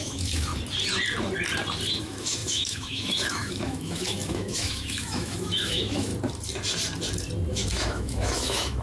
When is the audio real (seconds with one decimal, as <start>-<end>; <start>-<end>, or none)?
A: 0.5-2.0; 6.1-7.5